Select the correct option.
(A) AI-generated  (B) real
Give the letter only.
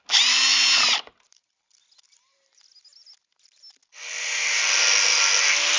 B